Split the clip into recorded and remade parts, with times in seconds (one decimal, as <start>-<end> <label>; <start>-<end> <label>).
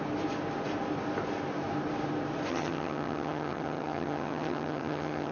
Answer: 0.0-2.5 recorded; 2.5-5.3 remade